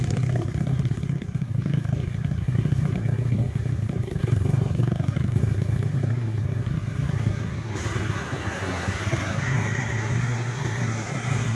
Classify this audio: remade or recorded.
remade